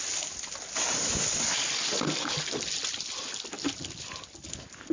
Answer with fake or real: real